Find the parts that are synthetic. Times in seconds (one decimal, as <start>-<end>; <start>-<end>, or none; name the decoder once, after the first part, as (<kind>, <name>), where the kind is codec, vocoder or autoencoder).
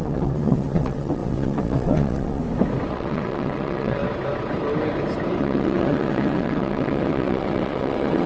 0.0-2.4 (vocoder, WaveNeXt); 2.9-4.0; 5.4-8.3